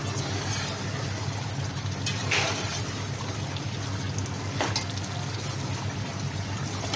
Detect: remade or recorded recorded